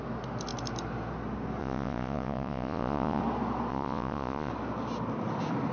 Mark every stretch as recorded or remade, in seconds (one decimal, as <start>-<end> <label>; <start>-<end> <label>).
0.0-1.6 recorded; 1.6-3.2 remade; 3.2-3.7 recorded; 3.7-4.5 remade; 4.5-5.7 recorded